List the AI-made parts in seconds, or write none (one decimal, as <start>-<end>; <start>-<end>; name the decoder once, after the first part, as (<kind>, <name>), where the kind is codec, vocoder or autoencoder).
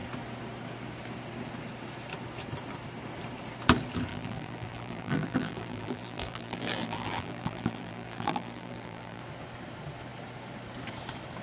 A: 4.1-9.2 (vocoder, BigVGAN v2)